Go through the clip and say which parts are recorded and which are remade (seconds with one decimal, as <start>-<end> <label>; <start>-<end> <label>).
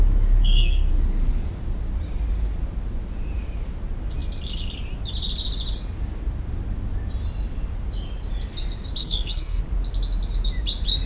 0.0-0.4 recorded; 0.4-0.9 remade; 0.9-9.0 recorded; 9.0-9.6 remade; 9.6-11.1 recorded